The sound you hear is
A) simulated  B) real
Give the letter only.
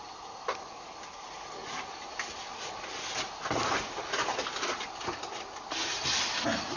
B